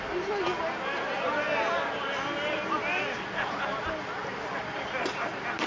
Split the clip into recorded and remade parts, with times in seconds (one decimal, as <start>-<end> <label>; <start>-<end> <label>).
0.0-5.7 recorded